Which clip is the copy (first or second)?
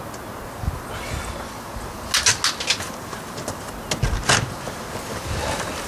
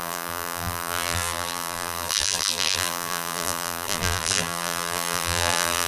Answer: second